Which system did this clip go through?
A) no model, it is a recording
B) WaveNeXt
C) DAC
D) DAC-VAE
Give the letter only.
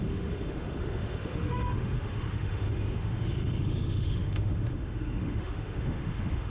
D